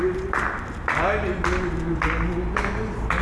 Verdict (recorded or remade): recorded